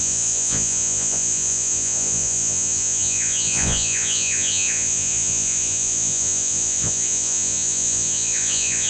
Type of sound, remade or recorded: remade